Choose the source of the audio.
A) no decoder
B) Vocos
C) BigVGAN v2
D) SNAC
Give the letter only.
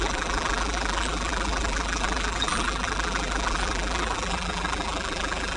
C